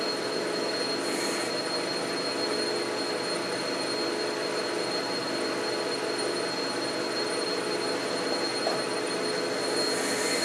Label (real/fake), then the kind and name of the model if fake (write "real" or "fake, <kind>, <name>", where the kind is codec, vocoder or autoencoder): real